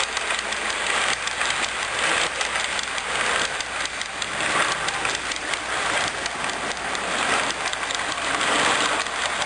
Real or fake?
real